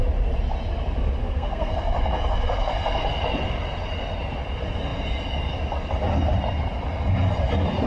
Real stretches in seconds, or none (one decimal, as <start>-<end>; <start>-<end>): 0.0-1.2; 1.7-7.9